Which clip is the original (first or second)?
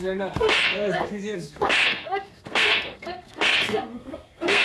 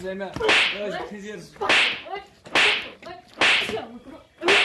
second